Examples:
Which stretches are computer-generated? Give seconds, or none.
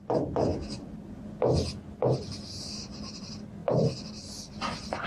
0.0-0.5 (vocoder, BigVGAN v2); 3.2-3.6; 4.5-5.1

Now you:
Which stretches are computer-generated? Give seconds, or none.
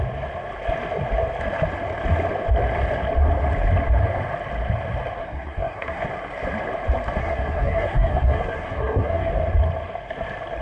5.2-6.1 (codec, SNAC); 7.2-9.3